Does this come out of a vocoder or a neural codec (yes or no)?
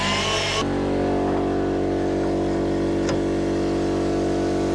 no